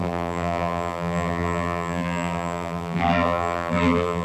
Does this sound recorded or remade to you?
remade